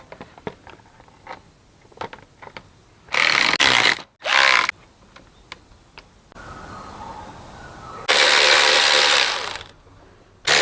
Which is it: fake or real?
real